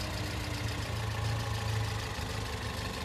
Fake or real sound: real